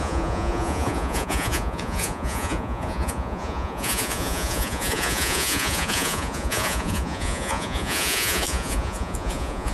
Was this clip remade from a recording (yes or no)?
yes